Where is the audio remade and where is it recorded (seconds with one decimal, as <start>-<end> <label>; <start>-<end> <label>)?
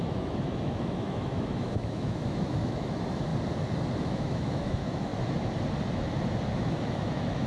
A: 0.0-3.3 remade; 3.3-4.0 recorded; 4.0-5.1 remade; 5.1-6.5 recorded; 6.5-7.5 remade